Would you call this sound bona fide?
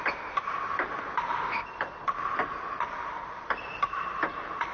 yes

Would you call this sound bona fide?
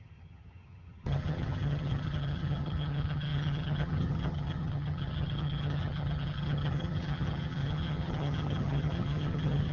no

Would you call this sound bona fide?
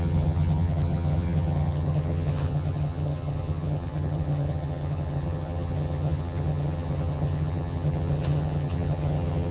no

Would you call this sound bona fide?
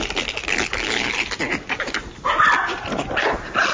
yes